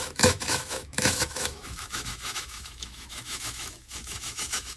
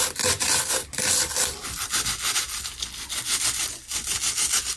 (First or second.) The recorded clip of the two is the second